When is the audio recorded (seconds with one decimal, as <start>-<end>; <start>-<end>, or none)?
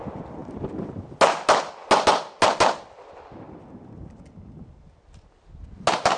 0.0-6.2